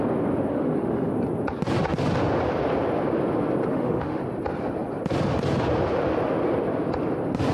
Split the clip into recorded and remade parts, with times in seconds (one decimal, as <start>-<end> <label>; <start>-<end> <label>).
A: 0.0-0.5 recorded; 0.5-1.1 remade; 1.1-3.7 recorded; 3.7-4.2 remade; 4.2-7.5 recorded